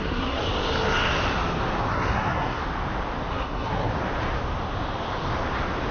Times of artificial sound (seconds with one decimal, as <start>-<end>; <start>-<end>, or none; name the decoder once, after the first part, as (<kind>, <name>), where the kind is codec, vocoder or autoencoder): 0.0-0.4 (codec, SNAC); 1.9-2.6; 3.3-3.9